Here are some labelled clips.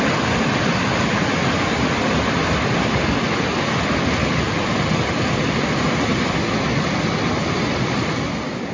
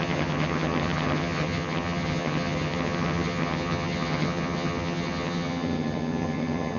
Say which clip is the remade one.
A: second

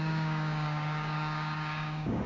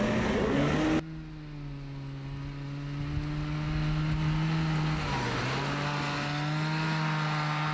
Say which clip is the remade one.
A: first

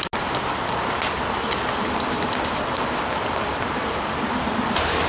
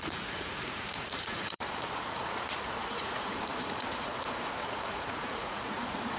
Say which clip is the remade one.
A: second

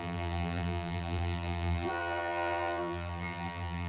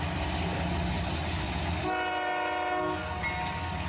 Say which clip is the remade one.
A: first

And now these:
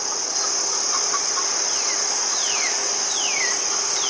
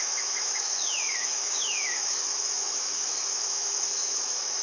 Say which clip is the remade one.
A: second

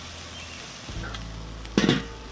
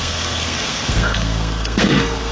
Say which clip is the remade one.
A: second